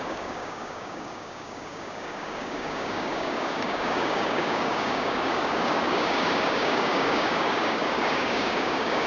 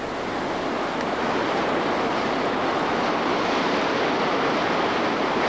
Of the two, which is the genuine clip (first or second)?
second